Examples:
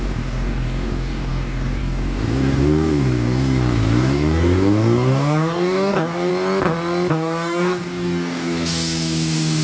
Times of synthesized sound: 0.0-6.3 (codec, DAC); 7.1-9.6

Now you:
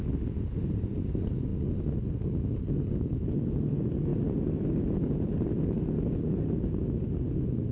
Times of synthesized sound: none